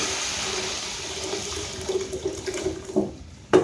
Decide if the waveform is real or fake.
real